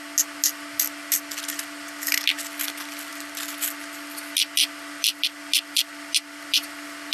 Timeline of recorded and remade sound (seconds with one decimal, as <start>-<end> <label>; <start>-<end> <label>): 0.0-7.1 recorded